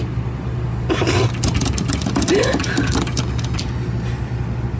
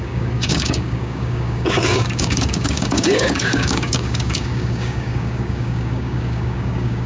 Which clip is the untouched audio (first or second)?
first